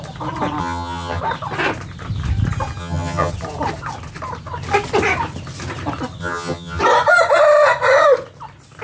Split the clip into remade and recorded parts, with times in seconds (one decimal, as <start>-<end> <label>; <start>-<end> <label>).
0.0-0.6 recorded; 0.6-1.2 remade; 1.2-2.8 recorded; 2.8-3.3 remade; 3.3-6.2 recorded; 6.2-6.8 remade; 6.8-8.8 recorded